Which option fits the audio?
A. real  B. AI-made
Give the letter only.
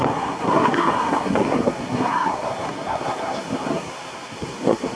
B